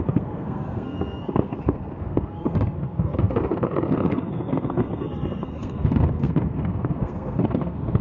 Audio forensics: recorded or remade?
remade